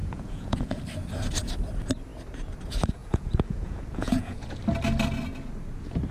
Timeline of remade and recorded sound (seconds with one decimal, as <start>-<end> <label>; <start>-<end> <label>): 0.0-0.8 remade; 0.8-3.0 recorded; 3.0-4.6 remade; 4.6-6.1 recorded